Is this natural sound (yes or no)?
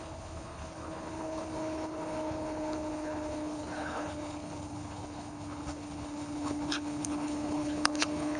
no